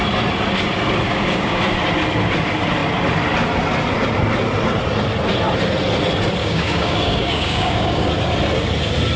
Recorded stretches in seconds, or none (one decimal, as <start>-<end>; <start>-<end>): 0.0-1.1; 1.6-6.4; 8.1-9.2